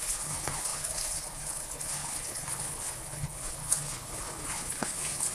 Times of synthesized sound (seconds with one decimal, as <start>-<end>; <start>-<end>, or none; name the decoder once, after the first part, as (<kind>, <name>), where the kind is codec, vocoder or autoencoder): 0.0-5.3 (codec, HILCodec)